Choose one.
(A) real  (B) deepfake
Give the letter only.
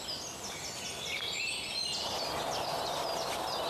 A